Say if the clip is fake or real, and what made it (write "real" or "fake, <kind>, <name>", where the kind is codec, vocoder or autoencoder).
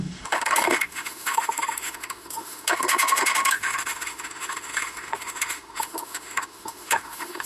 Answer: fake, autoencoder, DAC-VAE